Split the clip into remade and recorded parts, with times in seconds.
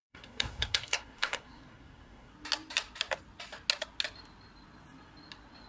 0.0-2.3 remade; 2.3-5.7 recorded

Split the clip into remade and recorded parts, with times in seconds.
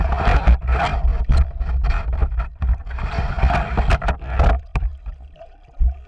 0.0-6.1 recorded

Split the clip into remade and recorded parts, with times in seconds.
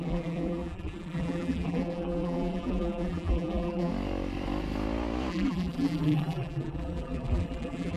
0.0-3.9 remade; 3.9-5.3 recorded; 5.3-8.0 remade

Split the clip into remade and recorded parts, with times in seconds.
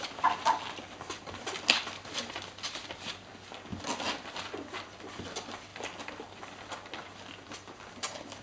0.0-8.4 recorded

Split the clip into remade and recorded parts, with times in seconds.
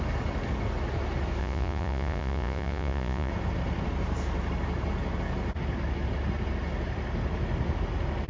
0.0-1.4 recorded; 1.4-3.3 remade; 3.3-8.3 recorded